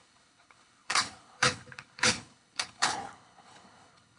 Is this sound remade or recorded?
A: remade